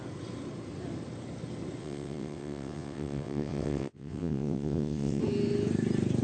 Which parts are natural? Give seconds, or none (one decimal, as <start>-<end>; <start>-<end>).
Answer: 0.0-1.8; 5.2-6.2